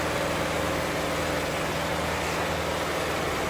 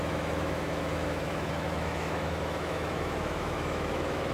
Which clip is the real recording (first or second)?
first